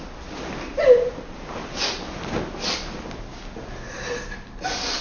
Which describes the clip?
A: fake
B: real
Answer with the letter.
B